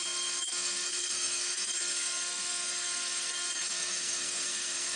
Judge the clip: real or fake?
fake